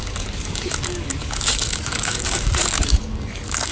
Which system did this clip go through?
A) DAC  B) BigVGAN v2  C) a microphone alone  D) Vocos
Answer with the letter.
A